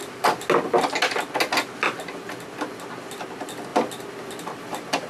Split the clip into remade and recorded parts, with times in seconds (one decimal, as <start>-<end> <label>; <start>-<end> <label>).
0.0-5.1 recorded